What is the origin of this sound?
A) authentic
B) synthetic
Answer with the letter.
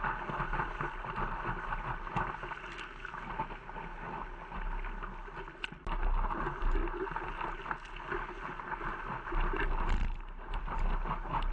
A